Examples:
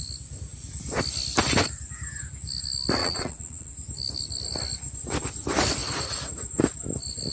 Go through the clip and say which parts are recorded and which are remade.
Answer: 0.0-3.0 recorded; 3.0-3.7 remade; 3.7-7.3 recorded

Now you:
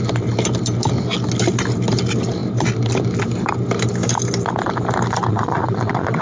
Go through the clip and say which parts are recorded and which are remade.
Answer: 0.0-5.3 recorded; 5.3-6.2 remade

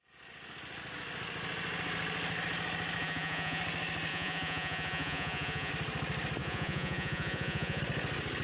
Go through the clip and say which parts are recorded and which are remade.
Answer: 0.0-3.0 recorded; 3.0-3.6 remade; 3.6-4.1 recorded; 4.1-5.7 remade; 5.7-6.4 recorded; 6.4-7.8 remade; 7.8-8.4 recorded

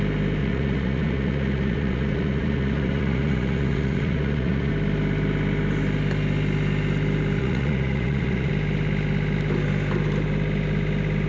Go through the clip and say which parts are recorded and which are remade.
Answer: 0.0-0.4 recorded; 0.4-4.7 remade; 4.7-7.4 recorded; 7.4-8.5 remade; 8.5-11.3 recorded

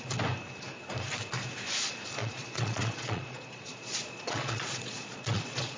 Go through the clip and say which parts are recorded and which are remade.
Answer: 0.0-2.2 recorded; 2.2-5.8 remade

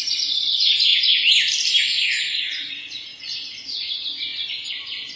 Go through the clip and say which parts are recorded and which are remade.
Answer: 0.0-1.9 recorded; 1.9-3.9 remade; 3.9-5.2 recorded

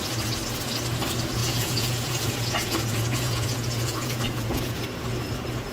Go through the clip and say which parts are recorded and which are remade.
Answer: 0.0-1.4 recorded; 1.4-4.8 remade; 4.8-5.7 recorded

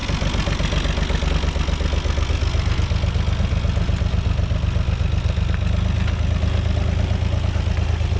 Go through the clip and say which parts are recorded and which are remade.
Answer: 0.0-8.2 recorded